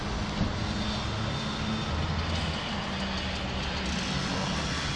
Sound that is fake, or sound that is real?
real